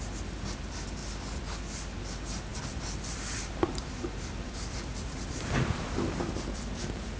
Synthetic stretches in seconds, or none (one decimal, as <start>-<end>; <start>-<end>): 2.5-6.8